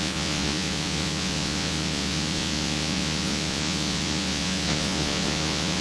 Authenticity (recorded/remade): remade